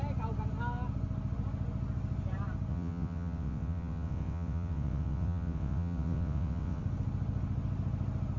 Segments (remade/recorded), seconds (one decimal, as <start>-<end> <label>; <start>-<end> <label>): 0.0-2.7 recorded; 2.7-6.8 remade; 6.8-8.4 recorded